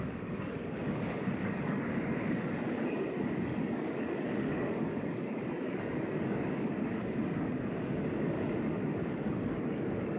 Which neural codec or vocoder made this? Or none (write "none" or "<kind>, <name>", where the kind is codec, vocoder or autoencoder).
codec, DAC